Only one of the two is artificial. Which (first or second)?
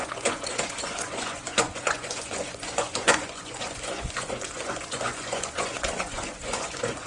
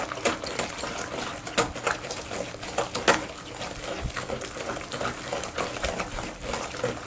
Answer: first